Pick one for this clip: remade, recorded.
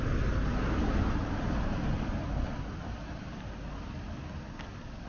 recorded